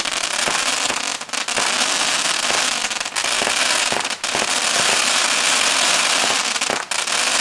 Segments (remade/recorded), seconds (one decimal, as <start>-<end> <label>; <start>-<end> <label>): 0.0-7.4 recorded